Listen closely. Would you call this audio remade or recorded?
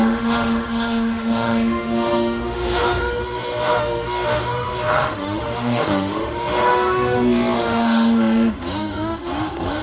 remade